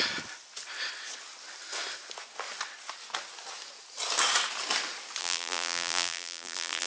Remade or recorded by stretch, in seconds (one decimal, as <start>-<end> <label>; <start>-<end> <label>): 0.0-5.2 recorded; 5.2-6.9 remade